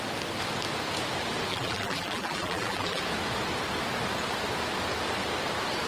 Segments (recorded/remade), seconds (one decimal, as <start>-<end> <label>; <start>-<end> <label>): 0.0-1.5 recorded; 1.5-3.0 remade; 3.0-5.9 recorded